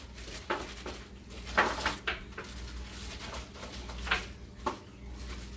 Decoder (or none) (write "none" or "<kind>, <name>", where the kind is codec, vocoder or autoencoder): none